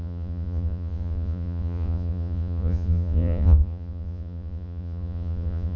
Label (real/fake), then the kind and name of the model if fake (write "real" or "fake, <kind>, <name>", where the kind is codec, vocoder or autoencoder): fake, vocoder, Vocos